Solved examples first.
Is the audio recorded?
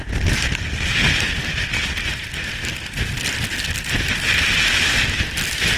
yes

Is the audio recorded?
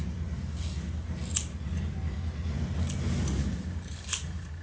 yes